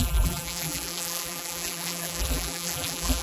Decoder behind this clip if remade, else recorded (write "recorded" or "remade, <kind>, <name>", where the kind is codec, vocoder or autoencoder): remade, vocoder, BigVGAN v2